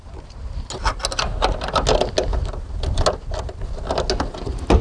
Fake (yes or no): no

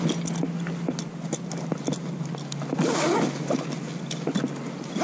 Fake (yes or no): no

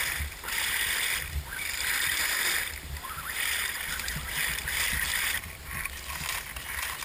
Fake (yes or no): yes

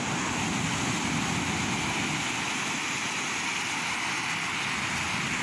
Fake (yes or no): no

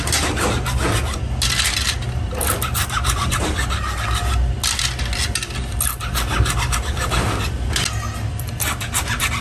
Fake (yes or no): no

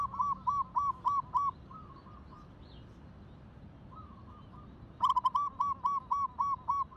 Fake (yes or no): no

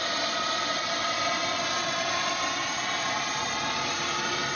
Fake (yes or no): no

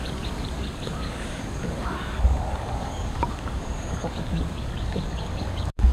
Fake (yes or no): yes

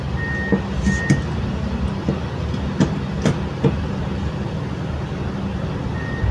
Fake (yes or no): no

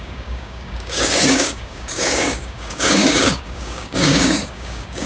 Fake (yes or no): yes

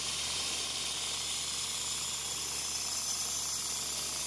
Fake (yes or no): yes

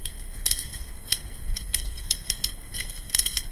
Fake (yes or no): yes